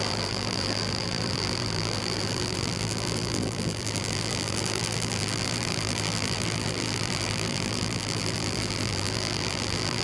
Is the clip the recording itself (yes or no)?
no